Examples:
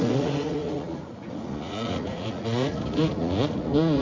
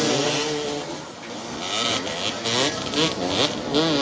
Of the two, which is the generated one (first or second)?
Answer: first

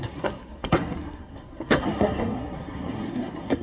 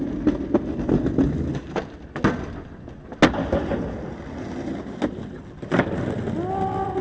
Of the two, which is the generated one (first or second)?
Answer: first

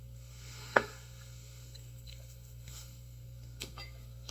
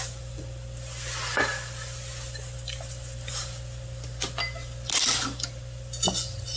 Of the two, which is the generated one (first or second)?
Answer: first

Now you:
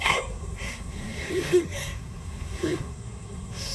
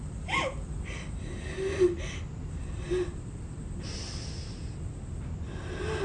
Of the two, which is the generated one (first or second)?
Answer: first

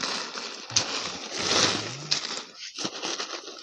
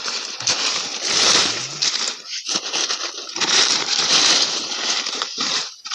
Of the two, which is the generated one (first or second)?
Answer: second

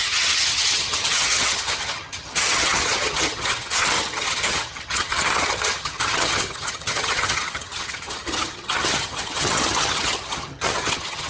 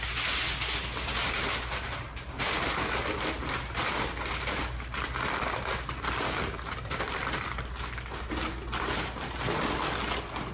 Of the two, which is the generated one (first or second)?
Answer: first